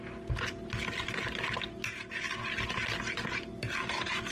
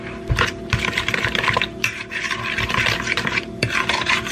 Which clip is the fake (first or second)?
second